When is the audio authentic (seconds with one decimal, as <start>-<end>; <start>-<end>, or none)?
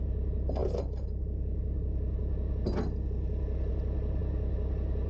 0.0-5.1